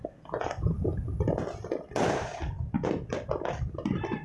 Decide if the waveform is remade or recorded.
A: recorded